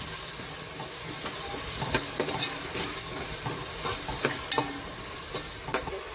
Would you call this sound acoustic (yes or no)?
yes